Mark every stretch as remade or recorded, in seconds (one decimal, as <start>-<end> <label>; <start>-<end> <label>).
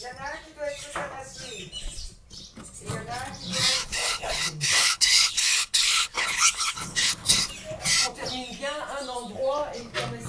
0.0-3.8 recorded; 3.8-7.5 remade; 7.5-10.3 recorded